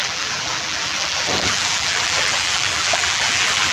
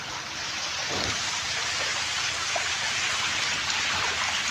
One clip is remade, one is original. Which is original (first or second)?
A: second